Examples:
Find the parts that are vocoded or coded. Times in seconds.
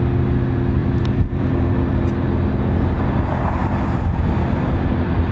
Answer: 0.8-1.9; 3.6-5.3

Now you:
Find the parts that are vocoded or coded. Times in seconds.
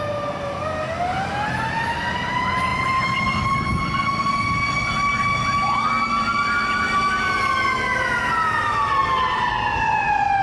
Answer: 2.7-3.5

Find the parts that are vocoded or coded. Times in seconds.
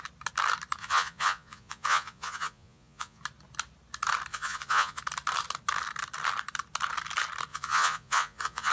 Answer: 0.8-3.2; 4.3-5.0; 7.5-8.7